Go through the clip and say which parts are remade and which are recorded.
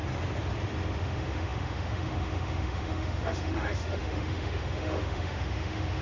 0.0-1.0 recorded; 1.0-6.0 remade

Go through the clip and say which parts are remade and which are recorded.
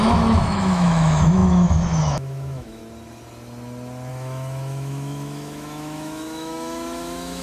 0.0-2.8 remade; 2.8-4.1 recorded; 4.1-7.4 remade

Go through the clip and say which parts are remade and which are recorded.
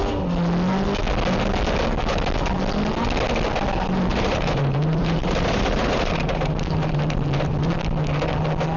0.0-4.1 recorded; 4.1-7.7 remade; 7.7-8.8 recorded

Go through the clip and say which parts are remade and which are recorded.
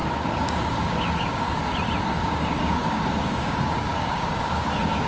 0.0-1.6 remade; 1.6-2.2 recorded; 2.2-5.1 remade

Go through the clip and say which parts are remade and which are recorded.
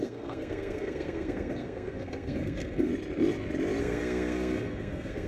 0.0-2.9 remade; 2.9-3.8 recorded; 3.8-5.3 remade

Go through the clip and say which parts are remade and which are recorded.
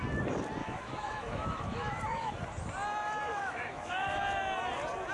0.0-0.6 recorded; 0.6-2.3 remade; 2.3-3.3 recorded; 3.3-4.2 remade; 4.2-5.1 recorded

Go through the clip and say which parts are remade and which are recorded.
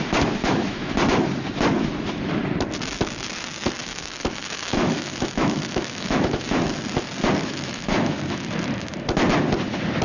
0.0-0.4 recorded; 0.4-0.9 remade; 0.9-3.8 recorded; 3.8-6.6 remade; 6.6-7.4 recorded; 7.4-8.2 remade; 8.2-10.0 recorded